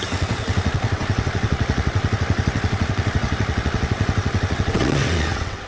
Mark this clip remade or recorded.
remade